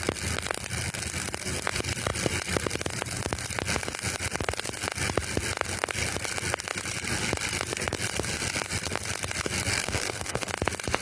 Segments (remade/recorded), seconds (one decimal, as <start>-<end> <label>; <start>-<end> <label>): 0.0-9.7 recorded; 9.7-10.5 remade; 10.5-11.0 recorded